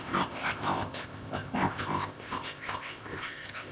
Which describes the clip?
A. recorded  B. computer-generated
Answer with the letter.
B